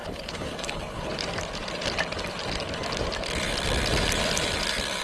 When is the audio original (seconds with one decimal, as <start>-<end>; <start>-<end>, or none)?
1.1-5.0